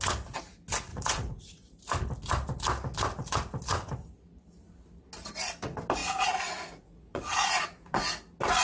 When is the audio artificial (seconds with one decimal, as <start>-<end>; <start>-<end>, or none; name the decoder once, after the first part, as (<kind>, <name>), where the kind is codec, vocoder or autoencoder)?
0.9-1.8 (vocoder, Vocos); 6.0-8.0